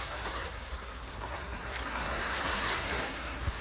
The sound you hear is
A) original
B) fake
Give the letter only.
B